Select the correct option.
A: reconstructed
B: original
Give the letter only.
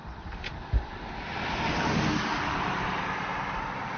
B